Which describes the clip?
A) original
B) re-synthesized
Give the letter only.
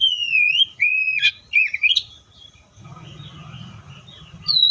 B